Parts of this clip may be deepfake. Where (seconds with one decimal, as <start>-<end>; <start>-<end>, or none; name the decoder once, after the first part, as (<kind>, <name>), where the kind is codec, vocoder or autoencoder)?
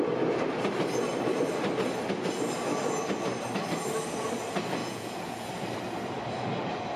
4.8-5.5 (vocoder, Vocos)